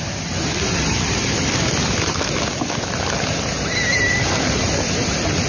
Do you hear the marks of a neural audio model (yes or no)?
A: yes